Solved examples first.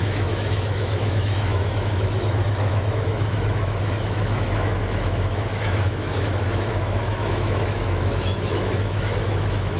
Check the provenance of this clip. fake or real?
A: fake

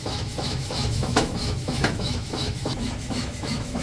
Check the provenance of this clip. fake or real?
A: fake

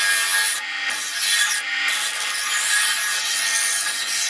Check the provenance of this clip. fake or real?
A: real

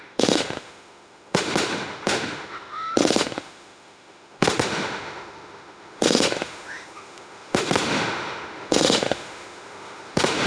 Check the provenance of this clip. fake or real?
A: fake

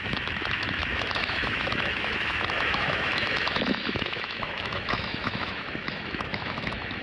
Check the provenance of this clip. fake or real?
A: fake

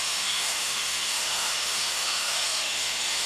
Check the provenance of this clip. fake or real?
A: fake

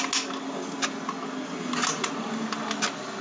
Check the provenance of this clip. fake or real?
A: real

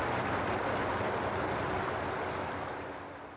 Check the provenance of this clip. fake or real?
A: real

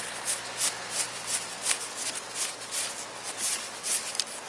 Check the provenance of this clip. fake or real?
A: real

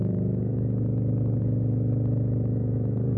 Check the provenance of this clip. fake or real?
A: fake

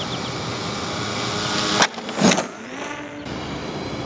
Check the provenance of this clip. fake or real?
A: real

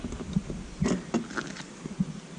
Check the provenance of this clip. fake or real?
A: real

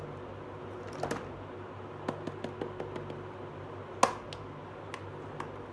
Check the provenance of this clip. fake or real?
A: real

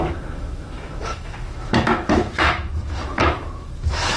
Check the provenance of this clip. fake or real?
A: fake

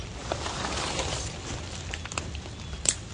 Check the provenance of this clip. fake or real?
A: real